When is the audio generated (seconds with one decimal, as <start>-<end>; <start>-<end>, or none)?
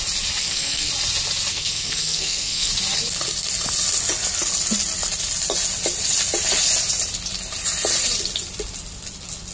0.4-0.9; 1.5-2.7